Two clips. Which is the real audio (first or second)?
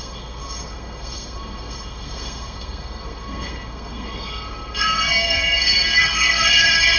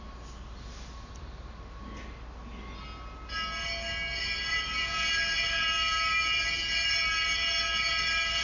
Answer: second